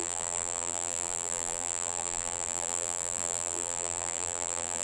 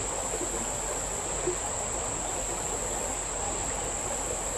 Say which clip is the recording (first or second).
second